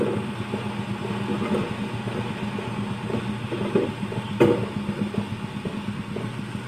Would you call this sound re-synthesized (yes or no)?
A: no